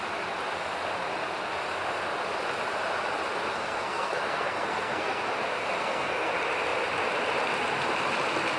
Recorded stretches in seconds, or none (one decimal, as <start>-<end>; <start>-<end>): 0.0-3.5; 5.2-5.8; 6.3-8.6

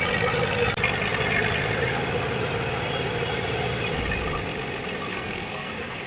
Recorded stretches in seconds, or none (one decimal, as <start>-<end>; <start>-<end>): 0.0-5.1

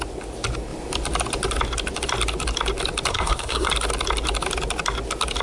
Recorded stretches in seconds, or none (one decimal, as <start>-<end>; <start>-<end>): 0.0-3.1; 3.7-5.4

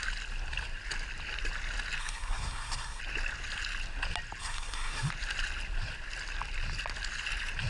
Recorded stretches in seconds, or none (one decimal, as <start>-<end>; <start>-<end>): 0.0-2.0; 3.0-4.4; 5.1-7.7

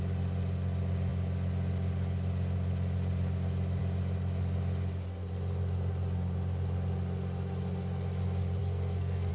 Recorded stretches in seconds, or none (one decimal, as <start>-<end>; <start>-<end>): 0.0-8.6

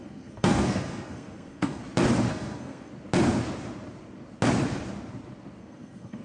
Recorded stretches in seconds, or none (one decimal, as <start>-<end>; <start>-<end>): 1.8-2.3; 2.9-5.6

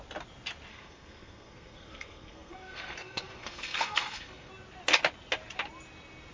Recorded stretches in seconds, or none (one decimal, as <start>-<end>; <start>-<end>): 0.0-0.7; 4.5-6.3

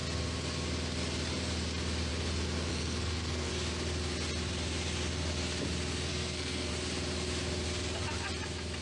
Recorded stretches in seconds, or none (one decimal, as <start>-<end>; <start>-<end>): 0.0-2.7; 3.5-6.1; 6.7-8.8